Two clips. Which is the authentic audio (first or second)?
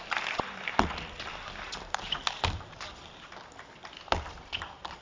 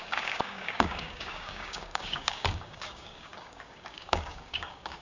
first